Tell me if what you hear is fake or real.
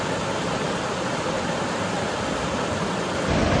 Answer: real